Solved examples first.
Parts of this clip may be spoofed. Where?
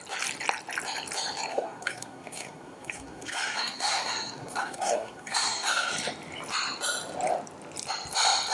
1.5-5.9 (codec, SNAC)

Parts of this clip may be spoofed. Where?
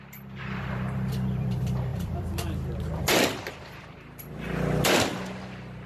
0.0-5.1 (vocoder, BigVGAN v2)